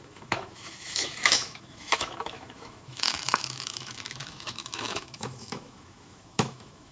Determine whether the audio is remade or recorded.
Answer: remade